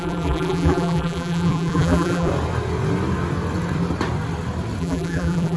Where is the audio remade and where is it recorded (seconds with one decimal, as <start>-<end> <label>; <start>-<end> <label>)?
0.0-2.3 remade; 2.3-4.8 recorded; 4.8-5.6 remade